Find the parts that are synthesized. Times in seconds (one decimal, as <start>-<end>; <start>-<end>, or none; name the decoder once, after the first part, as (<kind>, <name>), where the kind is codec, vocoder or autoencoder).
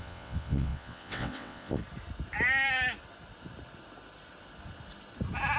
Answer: 0.0-1.8 (vocoder, WaveNeXt)